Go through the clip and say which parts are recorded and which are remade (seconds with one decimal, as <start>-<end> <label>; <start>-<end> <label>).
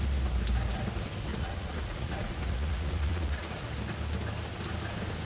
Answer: 0.0-1.3 recorded; 1.3-3.7 remade; 3.7-5.3 recorded